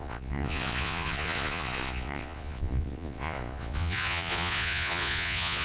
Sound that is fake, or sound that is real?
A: fake